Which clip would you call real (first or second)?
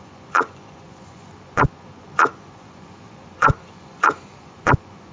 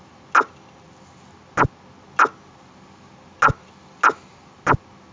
second